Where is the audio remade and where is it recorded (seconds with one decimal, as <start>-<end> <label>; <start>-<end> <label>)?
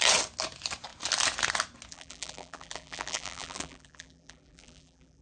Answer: 0.0-1.9 recorded; 1.9-5.2 remade